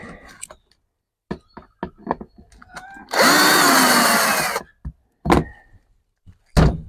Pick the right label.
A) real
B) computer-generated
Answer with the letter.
A